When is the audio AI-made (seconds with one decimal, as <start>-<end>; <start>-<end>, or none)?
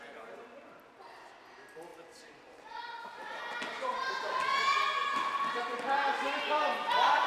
1.9-4.1